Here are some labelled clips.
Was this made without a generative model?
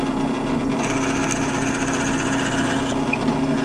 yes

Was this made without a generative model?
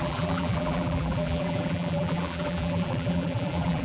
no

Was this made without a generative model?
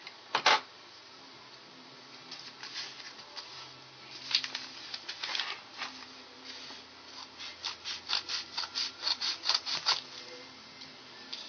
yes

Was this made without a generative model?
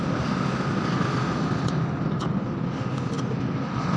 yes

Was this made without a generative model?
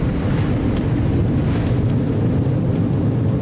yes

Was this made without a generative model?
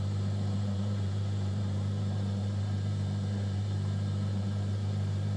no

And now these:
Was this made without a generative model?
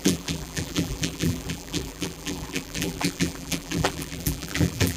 no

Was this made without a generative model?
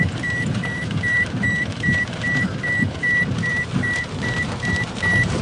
no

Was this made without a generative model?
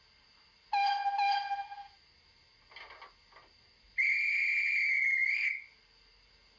yes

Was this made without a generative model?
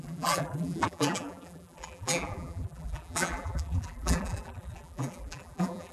no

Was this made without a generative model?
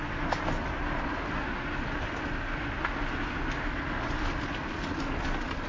yes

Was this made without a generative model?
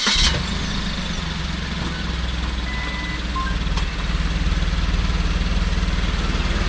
yes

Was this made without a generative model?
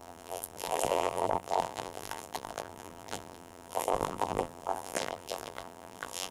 no